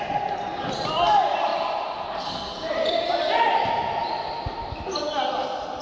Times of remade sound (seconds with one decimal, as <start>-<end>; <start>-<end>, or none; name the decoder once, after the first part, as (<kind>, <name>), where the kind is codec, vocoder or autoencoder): 1.5-3.2 (vocoder, BigVGAN v2)